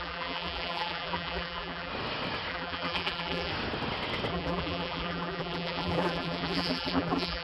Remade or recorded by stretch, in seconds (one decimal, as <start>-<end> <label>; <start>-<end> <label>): 0.0-1.9 remade; 1.9-2.5 recorded; 2.5-3.5 remade; 3.5-4.3 recorded; 4.3-7.4 remade